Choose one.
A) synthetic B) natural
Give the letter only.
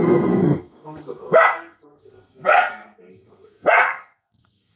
A